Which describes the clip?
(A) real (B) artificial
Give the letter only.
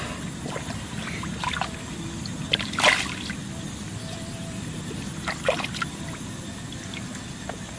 A